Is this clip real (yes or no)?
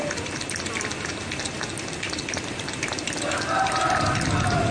yes